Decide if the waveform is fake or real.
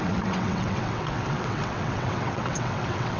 fake